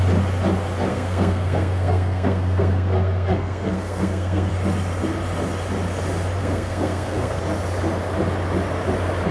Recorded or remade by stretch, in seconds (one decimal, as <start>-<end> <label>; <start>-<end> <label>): 0.0-0.9 recorded; 0.9-4.5 remade; 4.5-6.4 recorded; 6.4-7.4 remade; 7.4-9.3 recorded